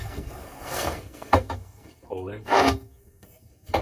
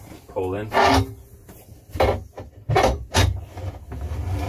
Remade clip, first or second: first